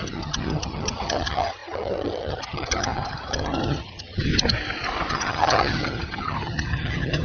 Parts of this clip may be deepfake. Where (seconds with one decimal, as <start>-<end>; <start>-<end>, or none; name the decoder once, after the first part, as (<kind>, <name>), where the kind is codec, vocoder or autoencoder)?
0.0-4.3 (vocoder, HiFi-GAN); 5.1-7.2